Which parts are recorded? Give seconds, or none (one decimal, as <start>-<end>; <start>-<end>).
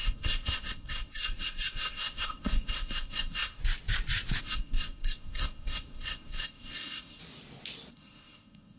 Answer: 3.6-4.4; 7.2-7.9